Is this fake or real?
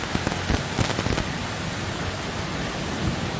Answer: real